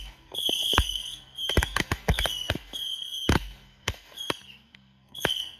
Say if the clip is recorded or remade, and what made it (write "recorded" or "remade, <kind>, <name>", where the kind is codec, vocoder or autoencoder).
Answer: remade, codec, SNAC